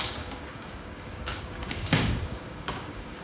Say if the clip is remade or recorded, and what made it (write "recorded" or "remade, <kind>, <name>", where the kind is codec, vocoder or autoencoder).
remade, codec, DAC